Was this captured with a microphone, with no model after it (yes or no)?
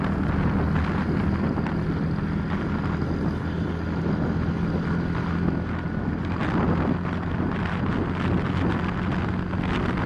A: yes